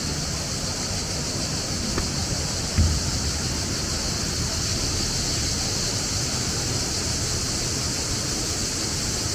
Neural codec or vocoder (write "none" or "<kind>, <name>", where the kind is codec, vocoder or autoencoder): none